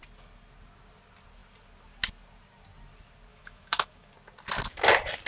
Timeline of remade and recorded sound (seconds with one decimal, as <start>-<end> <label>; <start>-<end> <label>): 0.0-3.3 recorded; 3.3-4.1 remade; 4.1-5.3 recorded